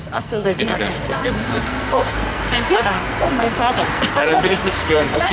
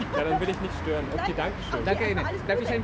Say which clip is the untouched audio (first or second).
second